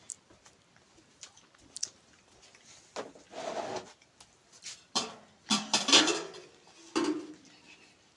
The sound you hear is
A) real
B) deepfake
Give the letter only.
A